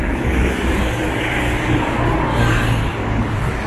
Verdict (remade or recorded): remade